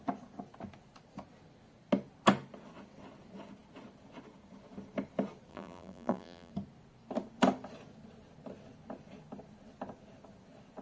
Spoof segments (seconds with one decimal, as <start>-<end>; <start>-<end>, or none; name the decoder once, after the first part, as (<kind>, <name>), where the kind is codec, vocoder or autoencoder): 5.5-6.5 (vocoder, BigVGAN v2)